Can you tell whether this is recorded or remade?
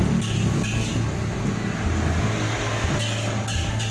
recorded